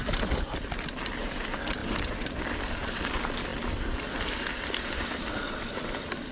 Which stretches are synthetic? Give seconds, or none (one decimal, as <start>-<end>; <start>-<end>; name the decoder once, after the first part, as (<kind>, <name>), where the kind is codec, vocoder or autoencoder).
none